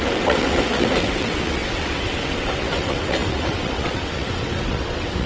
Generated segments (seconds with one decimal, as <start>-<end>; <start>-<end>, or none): 0.0-5.3